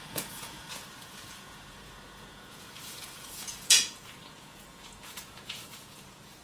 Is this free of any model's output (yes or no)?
no